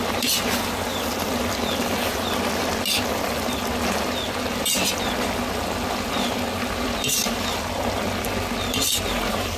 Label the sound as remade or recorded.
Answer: recorded